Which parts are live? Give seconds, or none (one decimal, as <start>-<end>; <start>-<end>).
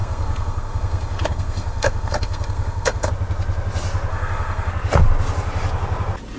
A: 3.1-4.1; 4.7-6.4